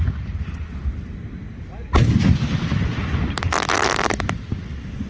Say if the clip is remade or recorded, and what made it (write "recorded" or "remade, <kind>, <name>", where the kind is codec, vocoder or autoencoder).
recorded